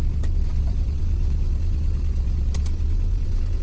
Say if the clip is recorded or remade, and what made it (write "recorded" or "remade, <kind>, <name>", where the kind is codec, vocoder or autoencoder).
remade, vocoder, BigVGAN v2